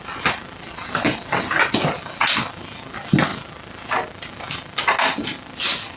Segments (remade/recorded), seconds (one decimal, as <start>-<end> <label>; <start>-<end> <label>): 0.0-6.0 recorded